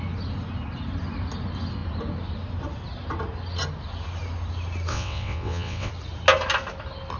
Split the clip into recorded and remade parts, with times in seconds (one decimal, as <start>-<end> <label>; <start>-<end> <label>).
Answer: 0.0-4.9 recorded; 4.9-5.9 remade; 5.9-7.2 recorded